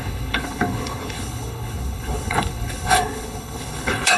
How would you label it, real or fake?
fake